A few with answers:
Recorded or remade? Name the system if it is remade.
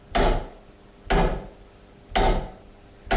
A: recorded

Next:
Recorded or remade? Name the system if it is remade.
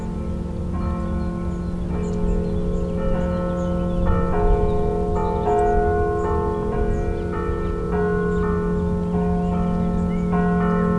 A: recorded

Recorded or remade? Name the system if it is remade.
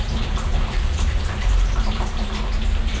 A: remade, vocoder, BigVGAN v2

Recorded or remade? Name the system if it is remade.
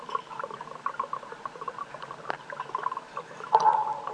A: recorded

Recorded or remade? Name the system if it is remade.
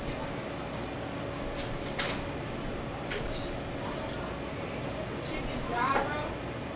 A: recorded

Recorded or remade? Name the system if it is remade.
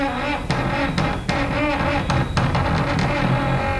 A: recorded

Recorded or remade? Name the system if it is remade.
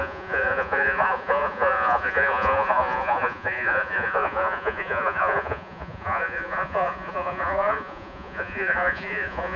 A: remade, vocoder, Vocos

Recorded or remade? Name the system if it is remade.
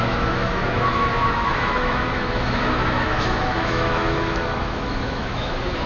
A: remade, autoencoder, DAC-VAE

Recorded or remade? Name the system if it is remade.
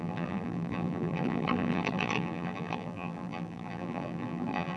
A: remade, vocoder, BigVGAN v2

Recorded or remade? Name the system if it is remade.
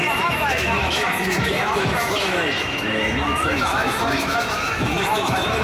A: remade, autoencoder, DAC-VAE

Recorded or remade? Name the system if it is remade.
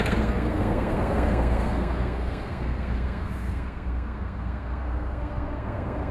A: remade, codec, SNAC